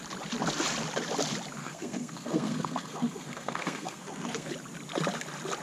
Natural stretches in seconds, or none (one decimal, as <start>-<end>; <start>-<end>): 0.0-1.6; 4.5-5.6